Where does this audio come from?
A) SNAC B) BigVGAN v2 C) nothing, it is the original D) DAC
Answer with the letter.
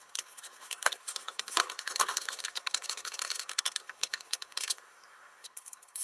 A